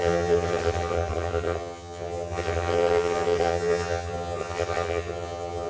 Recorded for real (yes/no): no